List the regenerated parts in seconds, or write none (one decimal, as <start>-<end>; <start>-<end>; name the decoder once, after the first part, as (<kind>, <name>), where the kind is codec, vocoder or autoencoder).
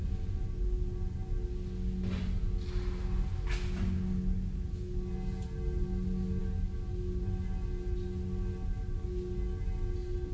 none